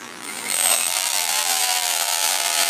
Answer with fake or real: fake